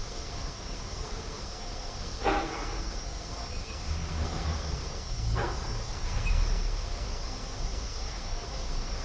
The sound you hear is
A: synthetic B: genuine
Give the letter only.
A